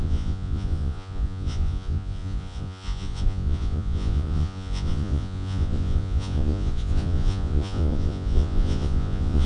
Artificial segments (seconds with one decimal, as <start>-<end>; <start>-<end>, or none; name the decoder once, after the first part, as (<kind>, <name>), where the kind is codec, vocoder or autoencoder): 0.0-9.5 (vocoder, Vocos)